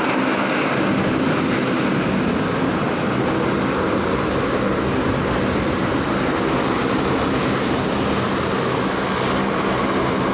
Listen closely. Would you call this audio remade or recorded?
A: recorded